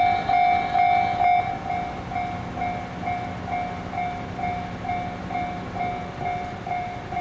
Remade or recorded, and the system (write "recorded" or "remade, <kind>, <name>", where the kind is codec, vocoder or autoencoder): recorded